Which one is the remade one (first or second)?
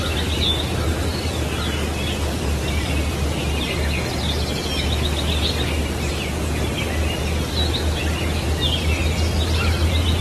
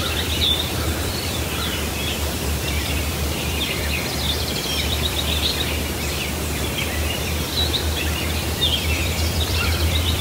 second